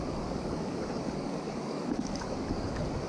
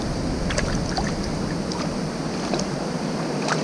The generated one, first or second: first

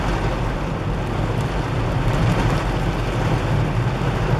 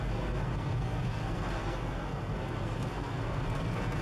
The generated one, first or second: second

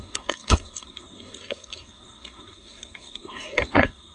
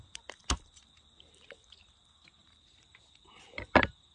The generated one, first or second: first